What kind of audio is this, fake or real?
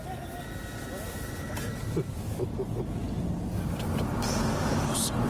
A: real